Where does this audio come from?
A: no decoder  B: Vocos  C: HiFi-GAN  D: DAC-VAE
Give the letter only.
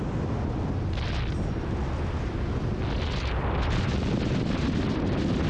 A